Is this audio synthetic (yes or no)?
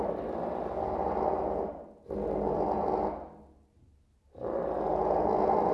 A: no